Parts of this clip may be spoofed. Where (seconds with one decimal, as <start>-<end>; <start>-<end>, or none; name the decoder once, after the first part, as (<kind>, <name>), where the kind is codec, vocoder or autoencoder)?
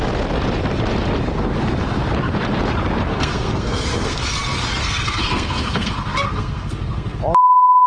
3.1-4.2 (codec, SNAC); 4.8-7.2